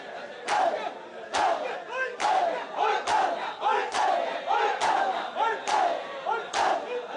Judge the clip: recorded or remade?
recorded